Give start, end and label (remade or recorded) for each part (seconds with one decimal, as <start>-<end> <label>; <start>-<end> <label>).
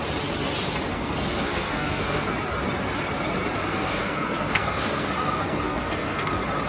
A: 0.0-0.9 recorded; 0.9-2.3 remade; 2.3-3.7 recorded; 3.7-6.3 remade; 6.3-6.7 recorded